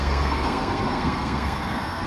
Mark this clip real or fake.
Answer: fake